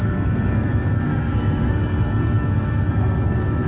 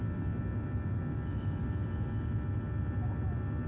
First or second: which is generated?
first